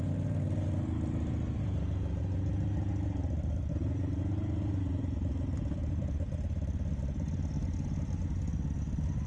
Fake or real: real